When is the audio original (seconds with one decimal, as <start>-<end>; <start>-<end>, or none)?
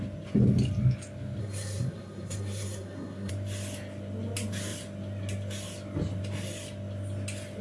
0.0-1.4; 3.3-7.6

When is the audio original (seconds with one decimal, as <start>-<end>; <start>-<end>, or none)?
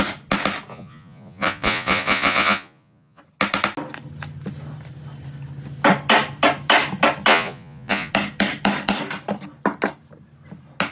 0.0-0.7; 3.2-7.3; 8.1-10.9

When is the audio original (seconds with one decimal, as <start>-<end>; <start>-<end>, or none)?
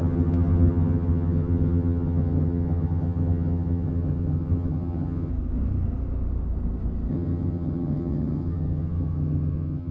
5.3-7.1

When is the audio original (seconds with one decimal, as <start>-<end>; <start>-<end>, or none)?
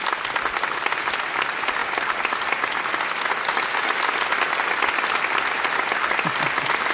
0.0-6.9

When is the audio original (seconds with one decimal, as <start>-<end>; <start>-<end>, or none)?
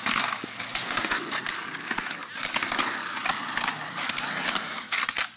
0.0-0.7; 1.4-5.4